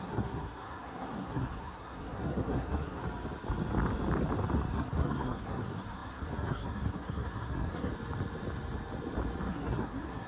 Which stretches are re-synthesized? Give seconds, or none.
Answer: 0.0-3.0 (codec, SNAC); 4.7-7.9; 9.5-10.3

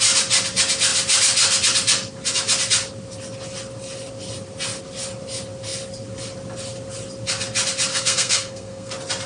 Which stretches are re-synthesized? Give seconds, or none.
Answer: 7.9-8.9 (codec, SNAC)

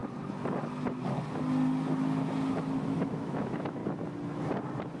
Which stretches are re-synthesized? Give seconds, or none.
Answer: 3.0-3.8 (autoencoder, DAC-VAE)